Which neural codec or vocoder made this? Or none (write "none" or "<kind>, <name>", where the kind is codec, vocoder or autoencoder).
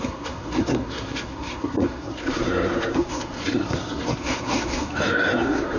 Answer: codec, SNAC